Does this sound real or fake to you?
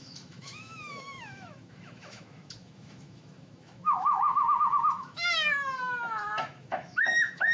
fake